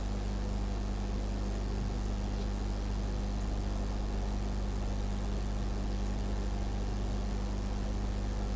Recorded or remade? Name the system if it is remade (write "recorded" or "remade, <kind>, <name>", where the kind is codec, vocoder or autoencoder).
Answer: recorded